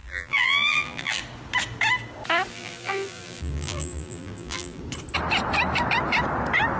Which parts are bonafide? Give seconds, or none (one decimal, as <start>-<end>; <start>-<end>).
1.2-2.5; 4.8-6.8